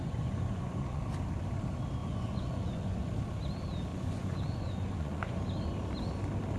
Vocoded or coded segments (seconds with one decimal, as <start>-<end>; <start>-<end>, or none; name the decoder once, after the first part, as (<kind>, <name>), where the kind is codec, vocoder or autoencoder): 0.0-1.0 (vocoder, Vocos); 2.0-3.1; 3.9-5.4